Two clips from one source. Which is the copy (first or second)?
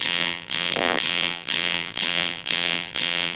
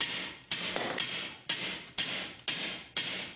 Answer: first